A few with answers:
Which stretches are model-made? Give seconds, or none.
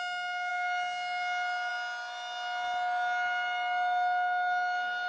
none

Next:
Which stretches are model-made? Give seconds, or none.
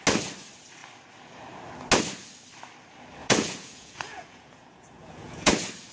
3.2-5.5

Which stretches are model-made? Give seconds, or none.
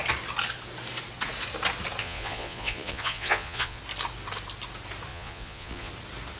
2.0-3.8; 5.1-5.9